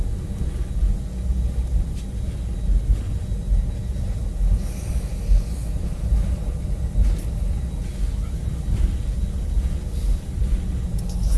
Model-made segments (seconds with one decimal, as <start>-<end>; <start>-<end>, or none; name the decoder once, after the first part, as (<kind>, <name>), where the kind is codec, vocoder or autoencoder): 5.6-6.5 (vocoder, BigVGAN v2)